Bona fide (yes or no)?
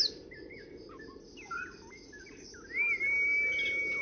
yes